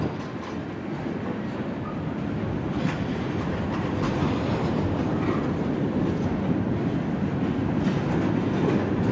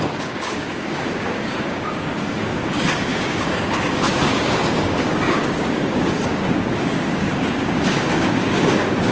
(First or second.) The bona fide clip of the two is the first